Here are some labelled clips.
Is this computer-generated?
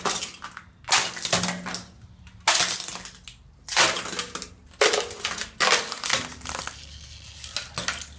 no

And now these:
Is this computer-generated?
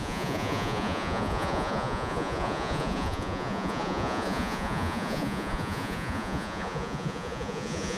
yes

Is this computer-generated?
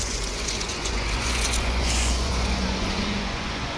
yes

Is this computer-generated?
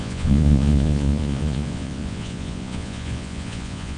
yes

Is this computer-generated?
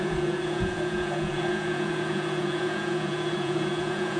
yes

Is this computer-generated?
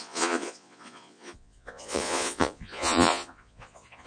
yes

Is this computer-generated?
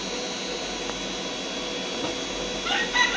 no